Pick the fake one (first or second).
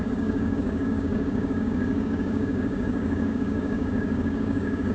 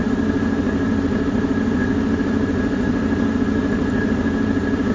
first